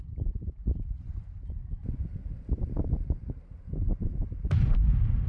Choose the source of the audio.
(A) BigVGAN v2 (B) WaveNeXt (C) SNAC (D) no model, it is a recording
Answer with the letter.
A